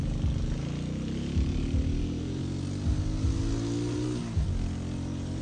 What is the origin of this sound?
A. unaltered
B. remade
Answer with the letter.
A